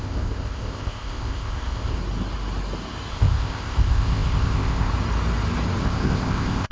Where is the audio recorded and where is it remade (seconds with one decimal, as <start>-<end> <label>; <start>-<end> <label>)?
0.0-2.0 remade; 2.0-3.1 recorded; 3.1-4.9 remade; 4.9-5.8 recorded; 5.8-6.7 remade